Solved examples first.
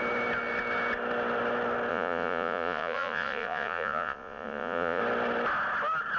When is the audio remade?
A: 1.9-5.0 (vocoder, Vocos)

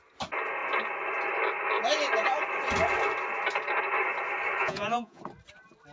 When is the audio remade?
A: 4.6-5.2 (vocoder, Vocos)

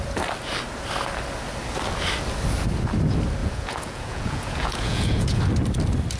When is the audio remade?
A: 3.4-5.4 (vocoder, Vocos)